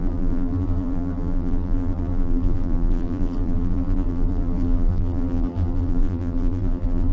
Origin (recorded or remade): remade